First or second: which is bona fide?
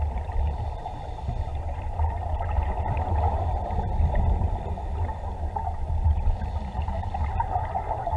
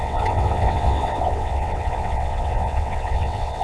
first